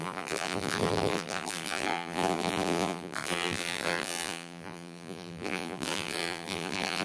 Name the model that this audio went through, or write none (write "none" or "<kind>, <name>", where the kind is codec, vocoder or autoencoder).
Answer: vocoder, BigVGAN v2